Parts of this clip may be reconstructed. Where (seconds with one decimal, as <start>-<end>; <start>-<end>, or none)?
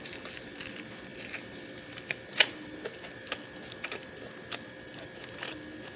0.0-6.0